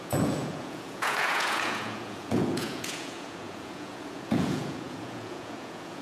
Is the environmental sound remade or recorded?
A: remade